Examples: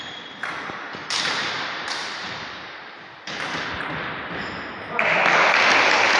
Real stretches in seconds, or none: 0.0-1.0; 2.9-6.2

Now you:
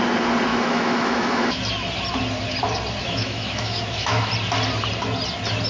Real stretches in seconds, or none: 0.0-0.5; 1.6-3.0; 4.3-5.7

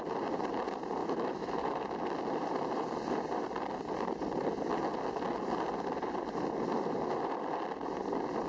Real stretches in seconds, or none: 0.0-1.0; 1.6-8.5